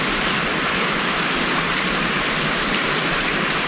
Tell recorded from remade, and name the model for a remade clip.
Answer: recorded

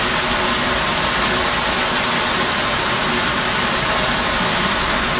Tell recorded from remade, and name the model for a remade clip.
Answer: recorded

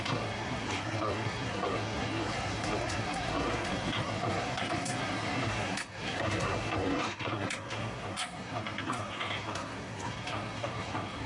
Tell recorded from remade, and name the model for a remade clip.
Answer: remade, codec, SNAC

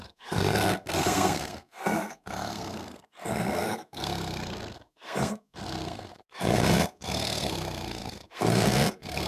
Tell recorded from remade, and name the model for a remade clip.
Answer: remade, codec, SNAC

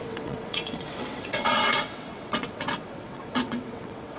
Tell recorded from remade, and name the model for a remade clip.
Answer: remade, vocoder, WaveNeXt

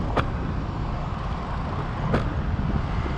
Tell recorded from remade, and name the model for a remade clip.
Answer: recorded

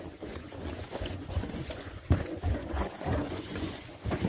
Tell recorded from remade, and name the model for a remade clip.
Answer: remade, vocoder, Vocos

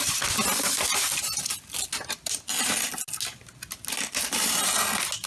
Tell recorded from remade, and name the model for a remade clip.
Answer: recorded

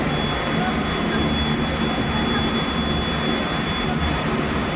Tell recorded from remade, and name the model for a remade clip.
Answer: recorded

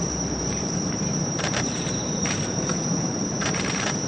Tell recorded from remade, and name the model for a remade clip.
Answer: remade, vocoder, BigVGAN v2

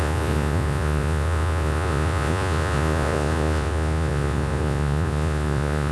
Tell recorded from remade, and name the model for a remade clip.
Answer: remade, vocoder, Vocos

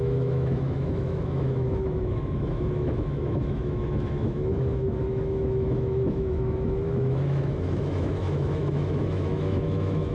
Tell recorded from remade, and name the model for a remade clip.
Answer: remade, autoencoder, DAC-VAE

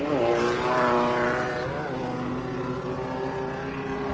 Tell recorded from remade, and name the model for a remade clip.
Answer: recorded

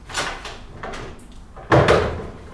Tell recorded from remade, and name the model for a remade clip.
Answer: recorded